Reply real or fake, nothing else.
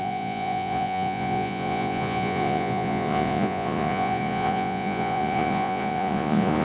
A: fake